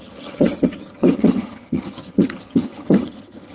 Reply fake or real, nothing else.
fake